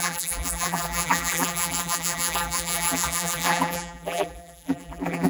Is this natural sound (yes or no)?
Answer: no